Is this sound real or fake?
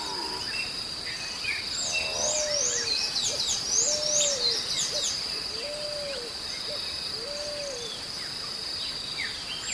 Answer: real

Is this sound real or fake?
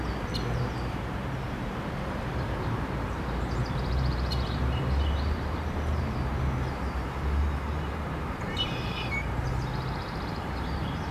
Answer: fake